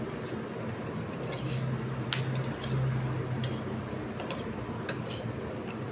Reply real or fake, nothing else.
real